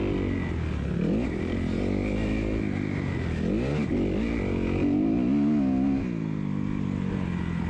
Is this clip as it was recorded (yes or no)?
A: yes